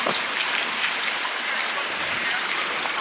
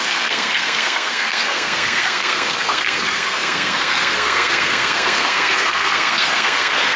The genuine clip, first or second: first